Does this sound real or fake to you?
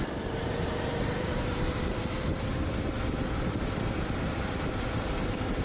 fake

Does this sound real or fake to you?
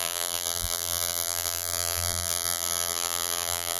fake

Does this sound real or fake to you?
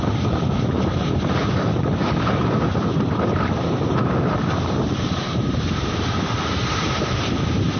fake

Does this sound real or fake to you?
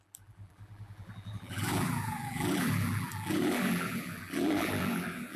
fake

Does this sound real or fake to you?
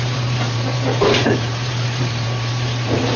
fake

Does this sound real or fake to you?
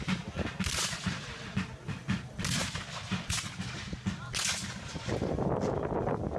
real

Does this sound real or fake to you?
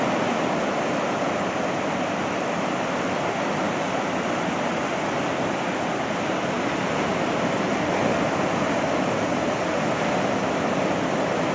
real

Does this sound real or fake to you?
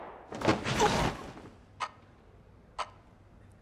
real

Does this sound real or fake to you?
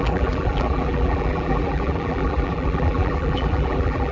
fake